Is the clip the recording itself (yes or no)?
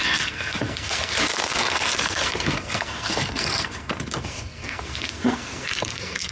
no